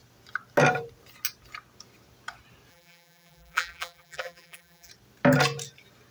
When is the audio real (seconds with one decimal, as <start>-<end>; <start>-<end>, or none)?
0.0-2.7; 4.9-6.1